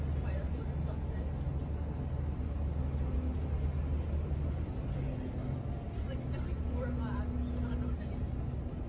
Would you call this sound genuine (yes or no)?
yes